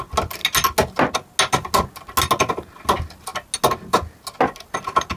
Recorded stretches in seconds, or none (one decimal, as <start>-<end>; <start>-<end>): 0.0-5.2